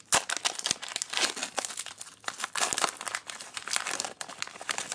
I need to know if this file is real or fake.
real